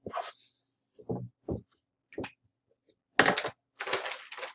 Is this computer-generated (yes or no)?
no